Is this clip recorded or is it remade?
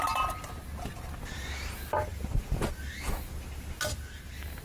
recorded